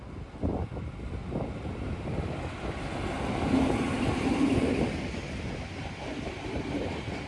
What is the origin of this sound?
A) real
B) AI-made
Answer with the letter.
A